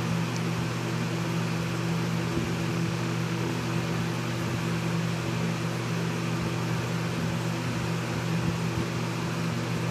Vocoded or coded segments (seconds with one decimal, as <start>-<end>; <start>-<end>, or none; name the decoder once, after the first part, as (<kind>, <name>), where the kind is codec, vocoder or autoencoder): 2.7-3.5 (autoencoder, DAC-VAE)